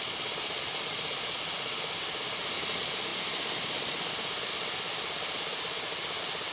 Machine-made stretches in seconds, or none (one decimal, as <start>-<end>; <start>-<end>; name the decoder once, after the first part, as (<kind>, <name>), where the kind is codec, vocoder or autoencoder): none